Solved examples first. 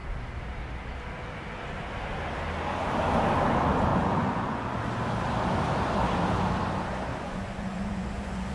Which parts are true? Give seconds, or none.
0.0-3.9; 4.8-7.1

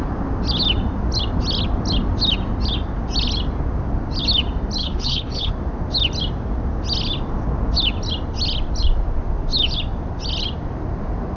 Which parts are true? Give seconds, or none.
0.0-4.8; 5.5-11.4

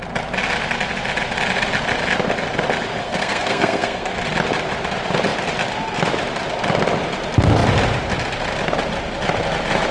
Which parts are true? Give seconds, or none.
0.0-3.0; 4.1-9.9

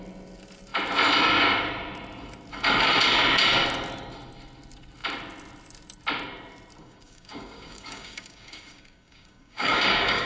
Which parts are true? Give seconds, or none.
0.0-6.8

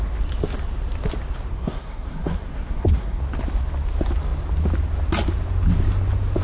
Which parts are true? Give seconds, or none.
0.0-1.5; 3.2-6.4

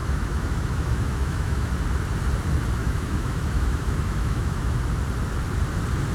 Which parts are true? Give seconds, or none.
1.7-2.8; 4.8-6.1

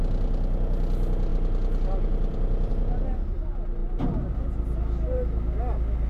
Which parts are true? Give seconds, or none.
0.0-1.3; 2.7-6.1